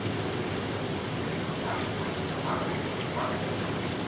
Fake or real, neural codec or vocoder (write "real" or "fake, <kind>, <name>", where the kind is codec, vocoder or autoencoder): real